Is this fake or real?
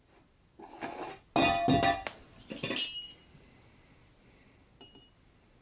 real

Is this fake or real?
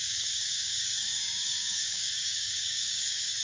fake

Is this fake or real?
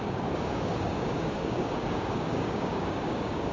fake